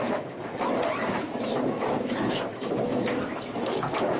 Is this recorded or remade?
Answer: remade